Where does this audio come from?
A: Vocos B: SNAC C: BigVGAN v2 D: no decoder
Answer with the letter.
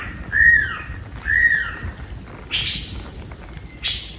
D